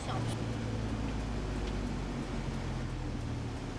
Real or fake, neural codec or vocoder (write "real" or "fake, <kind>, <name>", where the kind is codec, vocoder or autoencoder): real